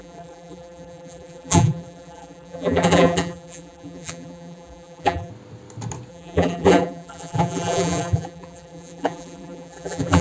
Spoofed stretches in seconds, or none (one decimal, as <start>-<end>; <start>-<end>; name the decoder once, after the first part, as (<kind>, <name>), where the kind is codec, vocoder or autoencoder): 0.0-5.3 (vocoder, BigVGAN v2); 6.1-10.2